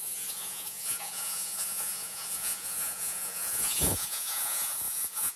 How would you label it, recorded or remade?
remade